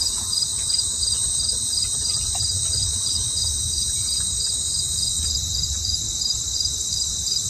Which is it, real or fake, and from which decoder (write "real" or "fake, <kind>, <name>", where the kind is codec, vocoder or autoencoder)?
fake, vocoder, BigVGAN v2